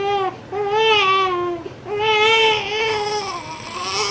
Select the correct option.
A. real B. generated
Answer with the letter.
A